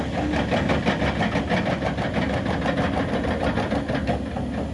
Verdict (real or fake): real